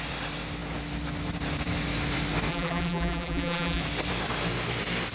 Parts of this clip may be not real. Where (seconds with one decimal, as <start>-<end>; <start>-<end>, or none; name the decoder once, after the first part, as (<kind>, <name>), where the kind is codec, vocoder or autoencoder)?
2.5-3.8 (vocoder, BigVGAN v2)

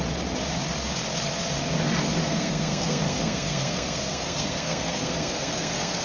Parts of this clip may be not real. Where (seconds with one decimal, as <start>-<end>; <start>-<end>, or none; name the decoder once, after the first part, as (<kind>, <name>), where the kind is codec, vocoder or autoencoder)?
2.2-6.0 (codec, SNAC)

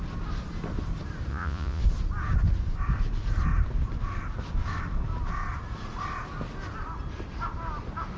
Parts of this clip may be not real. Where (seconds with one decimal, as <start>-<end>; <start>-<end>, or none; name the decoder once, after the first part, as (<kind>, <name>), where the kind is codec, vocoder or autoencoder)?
1.3-1.8 (vocoder, Vocos)

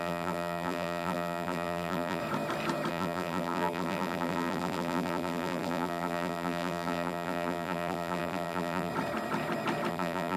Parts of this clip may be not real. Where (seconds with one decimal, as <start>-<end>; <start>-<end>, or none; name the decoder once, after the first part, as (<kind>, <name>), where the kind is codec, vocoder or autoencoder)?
0.0-2.2 (vocoder, BigVGAN v2); 2.9-8.9; 9.9-10.4

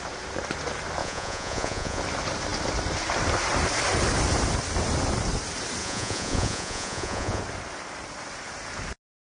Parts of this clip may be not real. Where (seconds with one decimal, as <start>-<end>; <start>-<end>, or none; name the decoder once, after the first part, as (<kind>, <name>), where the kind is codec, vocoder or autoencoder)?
1.0-2.0 (vocoder, Vocos); 5.8-7.4